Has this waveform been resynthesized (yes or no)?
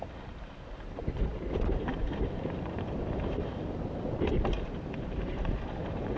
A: yes